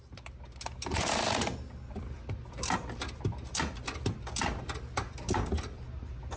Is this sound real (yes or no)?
yes